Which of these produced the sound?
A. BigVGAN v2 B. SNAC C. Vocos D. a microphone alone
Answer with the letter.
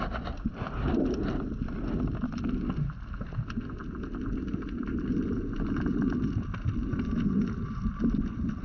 D